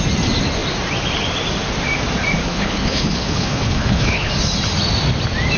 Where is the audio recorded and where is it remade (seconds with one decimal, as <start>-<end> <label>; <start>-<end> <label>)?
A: 0.0-2.4 recorded; 2.4-4.3 remade; 4.3-5.6 recorded